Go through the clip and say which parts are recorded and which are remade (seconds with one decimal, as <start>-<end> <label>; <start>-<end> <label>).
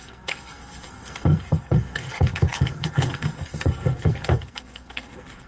0.0-5.5 remade